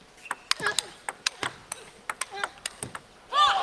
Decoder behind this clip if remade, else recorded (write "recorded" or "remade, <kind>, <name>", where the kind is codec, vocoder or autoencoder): recorded